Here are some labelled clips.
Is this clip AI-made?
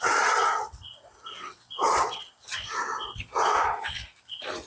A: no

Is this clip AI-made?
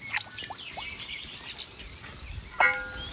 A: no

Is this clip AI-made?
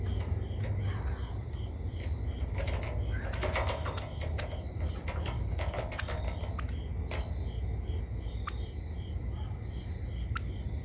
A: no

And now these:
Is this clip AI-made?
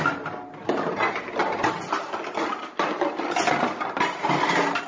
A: no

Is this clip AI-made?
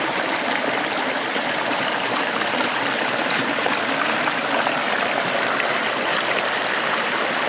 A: no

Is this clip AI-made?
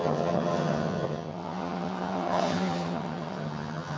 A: yes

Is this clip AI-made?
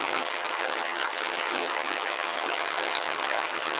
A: yes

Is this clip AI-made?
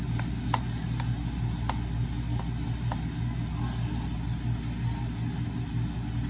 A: no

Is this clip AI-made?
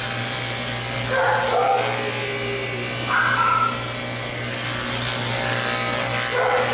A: no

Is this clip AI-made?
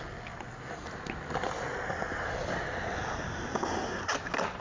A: no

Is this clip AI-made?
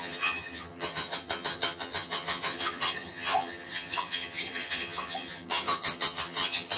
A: yes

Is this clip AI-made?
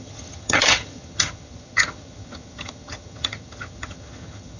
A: yes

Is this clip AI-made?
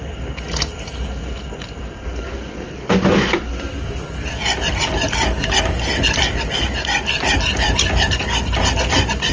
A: no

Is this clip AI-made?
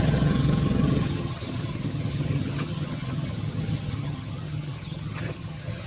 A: yes